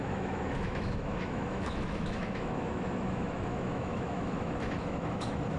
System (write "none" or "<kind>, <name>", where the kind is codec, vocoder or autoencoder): autoencoder, DAC-VAE